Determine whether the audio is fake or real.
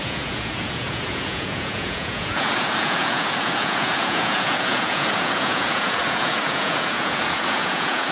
fake